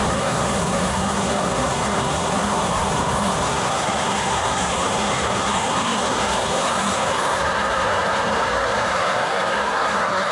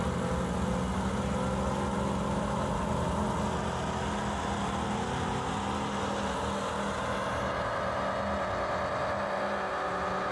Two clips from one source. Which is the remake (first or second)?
first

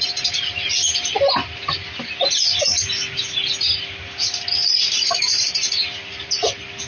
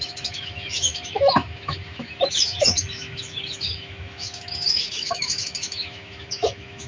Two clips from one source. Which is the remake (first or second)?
second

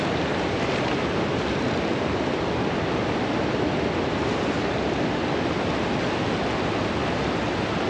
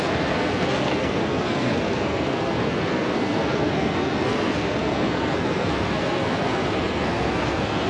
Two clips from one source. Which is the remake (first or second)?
second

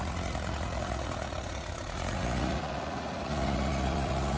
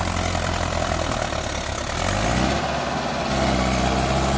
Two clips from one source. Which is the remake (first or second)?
first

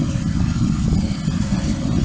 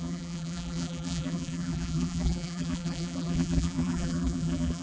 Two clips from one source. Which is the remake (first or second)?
second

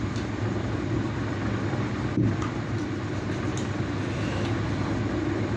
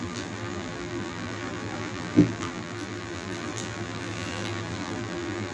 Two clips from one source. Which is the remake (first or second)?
second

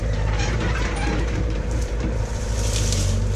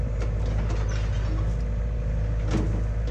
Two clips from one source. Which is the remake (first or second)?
first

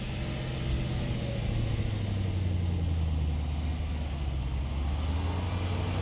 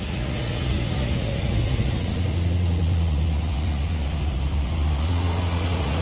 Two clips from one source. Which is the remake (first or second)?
second